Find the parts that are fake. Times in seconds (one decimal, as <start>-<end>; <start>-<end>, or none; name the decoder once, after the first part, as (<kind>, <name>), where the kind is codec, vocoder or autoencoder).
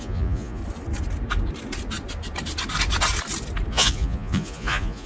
0.0-0.6 (vocoder, Vocos); 3.7-5.1